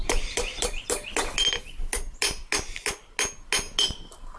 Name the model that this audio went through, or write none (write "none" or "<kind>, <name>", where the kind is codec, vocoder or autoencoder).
none